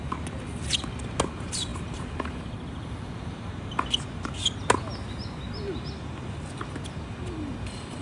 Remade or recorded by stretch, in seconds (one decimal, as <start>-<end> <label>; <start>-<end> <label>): 0.0-1.7 recorded; 1.7-3.7 remade; 3.7-8.0 recorded